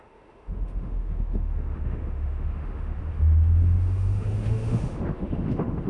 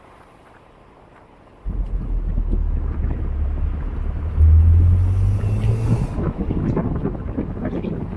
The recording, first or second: second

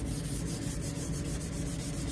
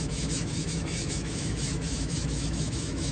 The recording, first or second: first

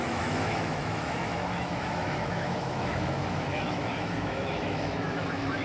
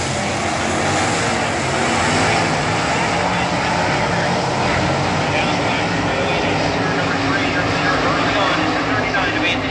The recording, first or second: second